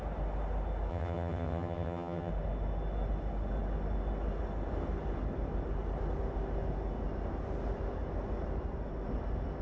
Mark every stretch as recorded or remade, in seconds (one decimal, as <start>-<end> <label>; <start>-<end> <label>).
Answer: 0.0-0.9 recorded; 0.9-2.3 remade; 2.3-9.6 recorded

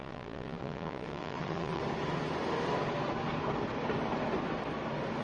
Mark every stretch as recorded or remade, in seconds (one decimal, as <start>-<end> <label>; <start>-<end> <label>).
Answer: 0.0-1.8 remade; 1.8-5.2 recorded

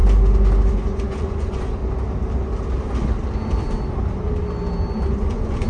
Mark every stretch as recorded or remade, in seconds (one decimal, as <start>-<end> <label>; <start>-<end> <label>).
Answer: 0.0-0.7 recorded; 0.7-1.8 remade; 1.8-5.2 recorded; 5.2-5.7 remade